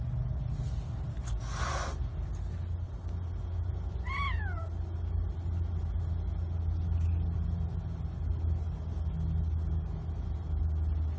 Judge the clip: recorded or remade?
recorded